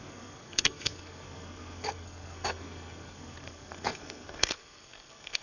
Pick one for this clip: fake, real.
fake